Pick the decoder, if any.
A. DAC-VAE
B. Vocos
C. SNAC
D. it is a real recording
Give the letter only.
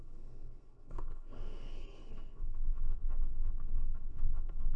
C